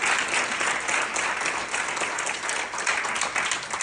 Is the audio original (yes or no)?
yes